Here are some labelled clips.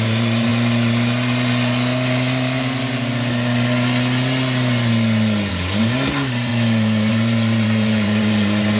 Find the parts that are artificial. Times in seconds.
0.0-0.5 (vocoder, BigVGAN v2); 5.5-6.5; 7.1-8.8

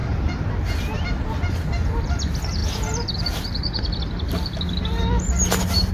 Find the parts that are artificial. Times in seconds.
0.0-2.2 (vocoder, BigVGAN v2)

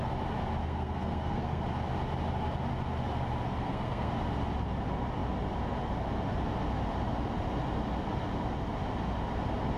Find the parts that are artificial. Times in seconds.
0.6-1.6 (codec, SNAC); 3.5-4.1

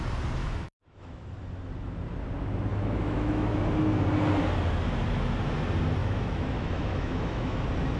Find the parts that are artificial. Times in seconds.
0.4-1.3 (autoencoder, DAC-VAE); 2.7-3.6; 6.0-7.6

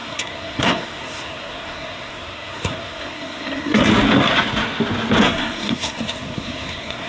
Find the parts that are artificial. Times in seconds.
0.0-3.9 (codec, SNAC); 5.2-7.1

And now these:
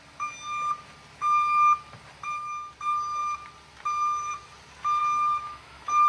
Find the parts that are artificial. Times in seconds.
5.0-6.1 (autoencoder, DAC-VAE)